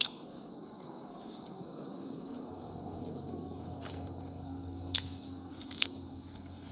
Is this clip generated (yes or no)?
yes